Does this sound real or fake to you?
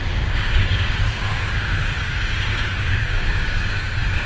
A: fake